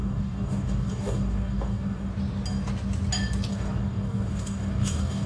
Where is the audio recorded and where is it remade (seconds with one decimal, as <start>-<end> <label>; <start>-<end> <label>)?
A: 0.0-2.1 remade; 2.1-3.5 recorded; 3.5-5.3 remade